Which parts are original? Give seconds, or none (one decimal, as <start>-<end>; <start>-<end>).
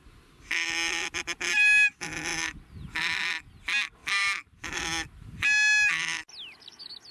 0.0-4.0; 4.8-7.1